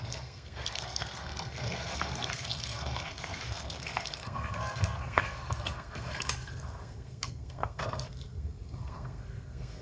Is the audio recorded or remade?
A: remade